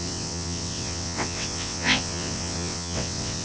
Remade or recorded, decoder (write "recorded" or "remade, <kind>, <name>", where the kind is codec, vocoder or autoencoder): remade, vocoder, WaveNeXt